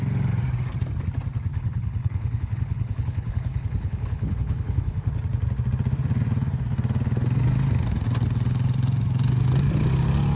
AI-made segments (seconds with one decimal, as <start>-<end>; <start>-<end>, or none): 1.5-5.1